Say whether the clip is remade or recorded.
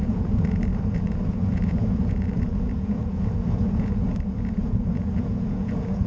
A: remade